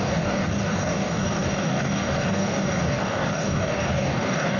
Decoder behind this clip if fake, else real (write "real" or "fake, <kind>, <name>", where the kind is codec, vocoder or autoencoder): fake, codec, DAC